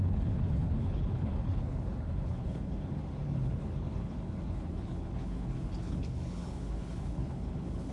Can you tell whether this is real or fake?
fake